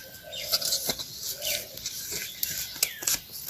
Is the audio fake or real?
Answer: real